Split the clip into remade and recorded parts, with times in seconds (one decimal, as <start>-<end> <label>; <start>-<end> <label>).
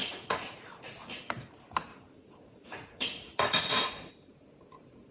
0.0-0.7 remade; 0.7-1.9 recorded; 1.9-4.1 remade; 4.1-5.1 recorded